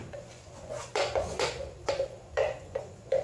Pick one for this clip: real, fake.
fake